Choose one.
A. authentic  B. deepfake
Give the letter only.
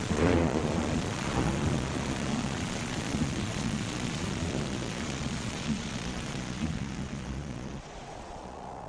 B